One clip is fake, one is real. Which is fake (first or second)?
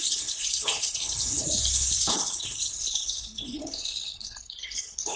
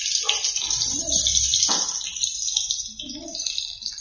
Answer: first